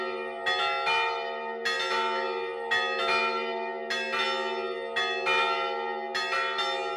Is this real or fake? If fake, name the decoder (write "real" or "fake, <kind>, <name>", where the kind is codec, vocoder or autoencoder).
real